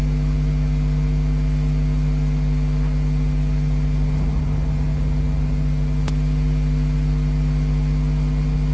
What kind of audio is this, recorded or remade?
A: recorded